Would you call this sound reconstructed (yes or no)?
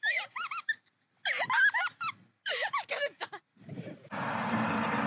no